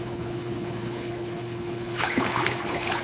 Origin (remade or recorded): remade